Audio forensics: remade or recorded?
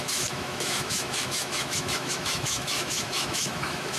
remade